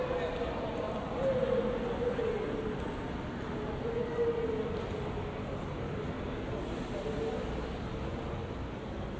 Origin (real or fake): real